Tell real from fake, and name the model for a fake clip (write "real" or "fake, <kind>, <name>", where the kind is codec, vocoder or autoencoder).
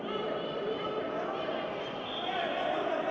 fake, vocoder, BigVGAN v2